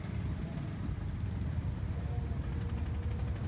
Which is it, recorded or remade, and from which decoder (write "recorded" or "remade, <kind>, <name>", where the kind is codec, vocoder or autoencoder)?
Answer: recorded